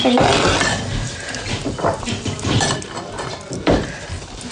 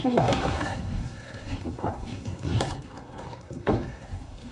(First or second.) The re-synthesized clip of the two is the second